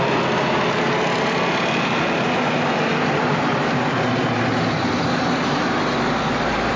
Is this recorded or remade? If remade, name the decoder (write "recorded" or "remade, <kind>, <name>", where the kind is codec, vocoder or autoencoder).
recorded